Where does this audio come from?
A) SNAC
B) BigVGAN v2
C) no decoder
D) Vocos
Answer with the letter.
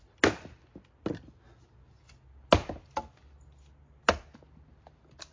C